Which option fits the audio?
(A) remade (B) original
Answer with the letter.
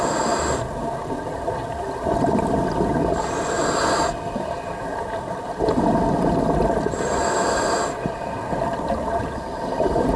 B